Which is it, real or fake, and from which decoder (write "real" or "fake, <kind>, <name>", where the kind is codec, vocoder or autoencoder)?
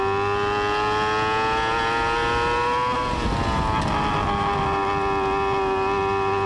real